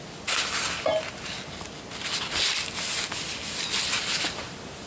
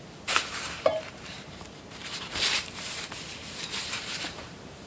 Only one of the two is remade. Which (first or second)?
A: second